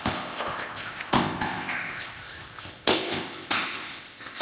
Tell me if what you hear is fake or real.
fake